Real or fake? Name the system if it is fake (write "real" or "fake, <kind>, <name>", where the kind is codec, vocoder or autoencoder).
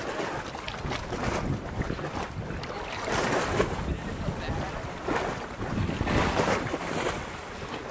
real